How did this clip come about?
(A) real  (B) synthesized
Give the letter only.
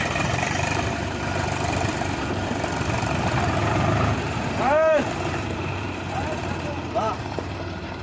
B